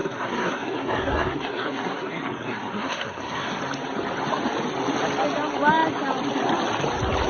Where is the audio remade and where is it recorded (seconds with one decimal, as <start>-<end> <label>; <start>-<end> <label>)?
0.0-3.6 remade; 3.6-7.3 recorded